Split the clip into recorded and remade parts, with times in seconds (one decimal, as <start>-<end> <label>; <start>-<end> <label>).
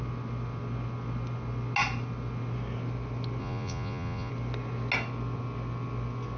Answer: 0.0-3.4 recorded; 3.4-4.3 remade; 4.3-6.4 recorded